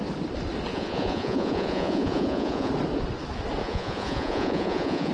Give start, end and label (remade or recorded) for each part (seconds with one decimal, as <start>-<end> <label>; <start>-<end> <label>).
0.0-0.7 recorded; 0.7-2.7 remade; 2.7-3.6 recorded; 3.6-5.1 remade

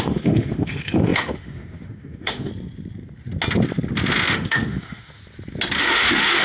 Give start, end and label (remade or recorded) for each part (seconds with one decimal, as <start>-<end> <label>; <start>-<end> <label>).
0.0-2.5 remade; 2.5-4.3 recorded; 4.3-5.2 remade; 5.2-5.8 recorded; 5.8-6.4 remade